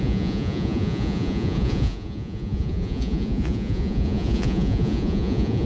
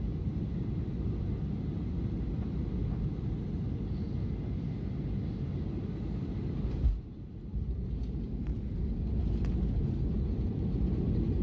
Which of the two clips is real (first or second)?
second